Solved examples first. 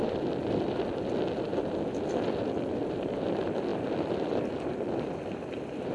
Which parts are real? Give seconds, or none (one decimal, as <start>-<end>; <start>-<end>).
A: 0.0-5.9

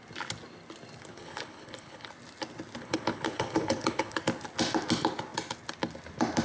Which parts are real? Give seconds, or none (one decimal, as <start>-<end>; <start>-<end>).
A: 0.0-1.1; 2.1-2.8; 4.2-6.4

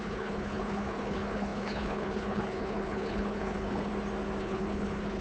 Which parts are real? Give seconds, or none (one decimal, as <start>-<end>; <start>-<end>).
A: 3.9-4.4

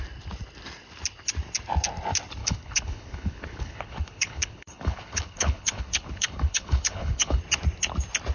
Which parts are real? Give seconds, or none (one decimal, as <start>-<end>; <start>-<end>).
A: 0.0-2.4; 7.4-8.3

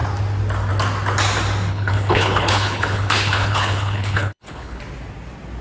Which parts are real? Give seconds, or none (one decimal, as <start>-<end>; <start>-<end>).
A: 0.0-1.7; 4.8-5.6

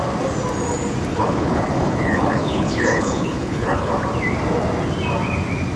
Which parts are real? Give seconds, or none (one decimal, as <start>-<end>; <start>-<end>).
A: 0.0-1.1; 3.9-5.8